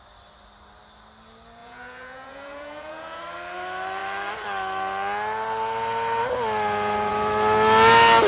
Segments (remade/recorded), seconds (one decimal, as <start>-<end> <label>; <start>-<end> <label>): 0.0-1.6 recorded; 1.6-3.2 remade; 3.2-8.3 recorded